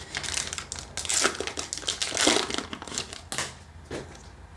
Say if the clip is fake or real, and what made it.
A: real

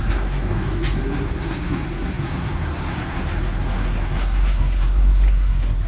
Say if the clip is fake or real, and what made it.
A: fake, codec, SNAC